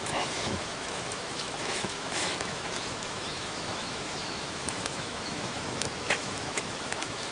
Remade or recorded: remade